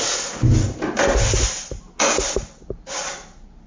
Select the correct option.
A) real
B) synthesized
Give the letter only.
A